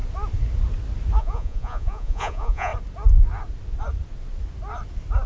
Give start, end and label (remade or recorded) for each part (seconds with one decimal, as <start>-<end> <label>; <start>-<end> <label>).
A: 0.0-1.2 recorded; 1.2-2.7 remade; 2.7-5.3 recorded